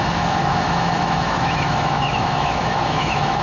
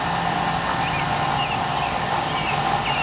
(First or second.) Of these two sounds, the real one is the second